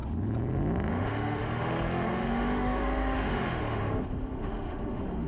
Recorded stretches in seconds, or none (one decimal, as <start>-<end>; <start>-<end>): 0.0-0.9